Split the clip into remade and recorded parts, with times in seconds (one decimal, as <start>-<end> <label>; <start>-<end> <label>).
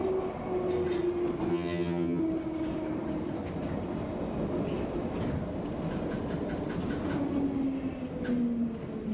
0.0-1.5 recorded; 1.5-2.2 remade; 2.2-9.1 recorded